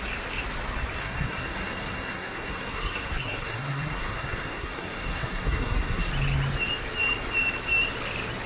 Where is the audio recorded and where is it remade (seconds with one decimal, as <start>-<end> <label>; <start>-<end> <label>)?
0.0-1.0 recorded; 1.0-6.1 remade; 6.1-8.5 recorded

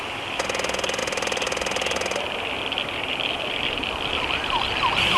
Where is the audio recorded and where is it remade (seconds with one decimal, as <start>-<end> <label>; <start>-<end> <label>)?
0.0-5.2 recorded

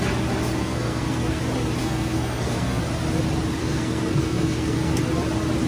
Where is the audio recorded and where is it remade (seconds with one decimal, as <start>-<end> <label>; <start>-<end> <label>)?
0.0-0.6 recorded; 0.6-1.4 remade; 1.4-1.8 recorded; 1.8-2.8 remade; 2.8-3.6 recorded; 3.6-5.0 remade; 5.0-5.7 recorded

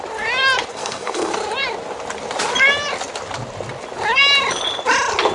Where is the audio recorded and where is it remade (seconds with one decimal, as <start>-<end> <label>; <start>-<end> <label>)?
0.0-0.7 recorded; 0.7-1.3 remade; 1.3-5.3 recorded

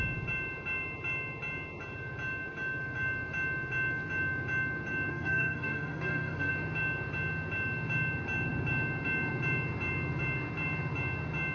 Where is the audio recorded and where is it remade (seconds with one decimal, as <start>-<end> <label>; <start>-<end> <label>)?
0.0-5.1 recorded; 5.1-6.5 remade; 6.5-11.5 recorded

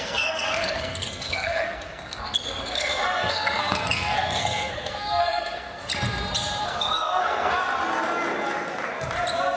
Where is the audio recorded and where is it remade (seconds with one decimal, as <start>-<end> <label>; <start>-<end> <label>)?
0.0-5.9 remade; 5.9-6.6 recorded; 6.6-7.6 remade; 7.6-9.6 recorded

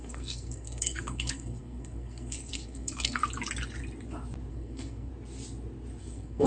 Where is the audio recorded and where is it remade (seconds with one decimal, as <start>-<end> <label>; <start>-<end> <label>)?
0.0-3.2 remade; 3.2-4.5 recorded; 4.5-5.1 remade; 5.1-6.0 recorded; 6.0-6.5 remade

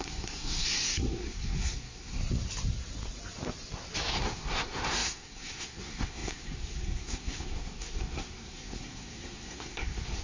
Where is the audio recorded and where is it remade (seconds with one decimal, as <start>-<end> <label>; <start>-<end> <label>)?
0.0-2.2 remade; 2.2-4.1 recorded; 4.1-10.2 remade